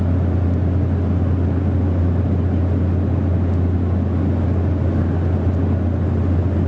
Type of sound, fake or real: real